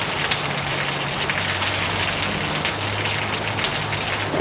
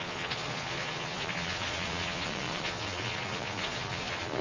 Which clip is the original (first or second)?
first